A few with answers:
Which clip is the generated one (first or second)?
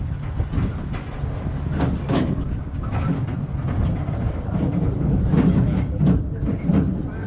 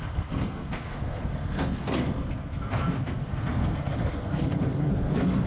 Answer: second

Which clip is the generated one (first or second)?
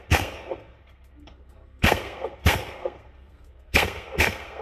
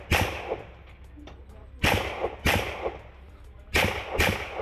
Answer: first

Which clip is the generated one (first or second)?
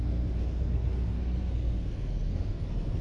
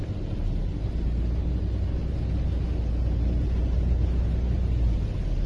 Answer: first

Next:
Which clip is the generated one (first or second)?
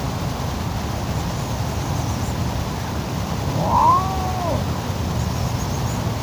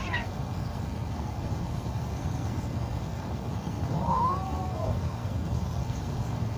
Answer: second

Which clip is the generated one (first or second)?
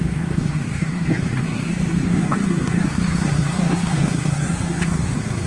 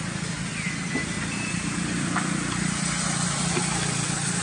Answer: first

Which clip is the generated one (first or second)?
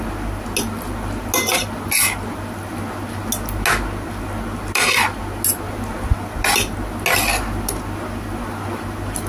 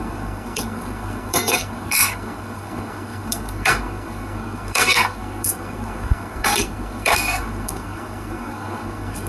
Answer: second